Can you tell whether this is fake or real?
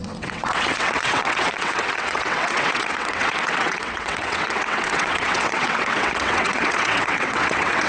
fake